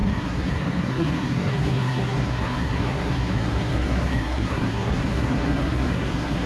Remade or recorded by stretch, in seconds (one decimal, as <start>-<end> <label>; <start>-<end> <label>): 0.0-6.5 remade